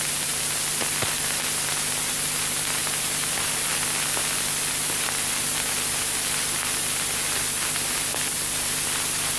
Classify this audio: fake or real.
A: real